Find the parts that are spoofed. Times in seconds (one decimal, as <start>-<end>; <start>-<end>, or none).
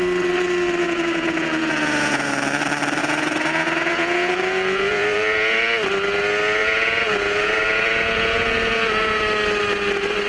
0.8-2.3; 3.0-5.6; 6.6-9.2